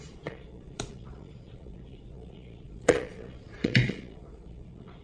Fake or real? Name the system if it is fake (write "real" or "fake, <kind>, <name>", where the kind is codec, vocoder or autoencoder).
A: fake, vocoder, Vocos